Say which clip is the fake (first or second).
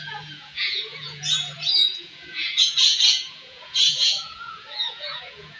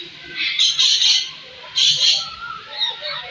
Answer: first